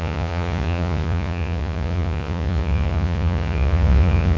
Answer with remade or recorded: remade